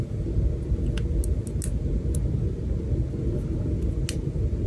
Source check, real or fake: real